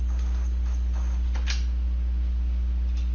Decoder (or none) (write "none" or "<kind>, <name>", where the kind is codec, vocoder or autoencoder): none